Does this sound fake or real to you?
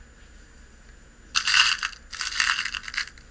real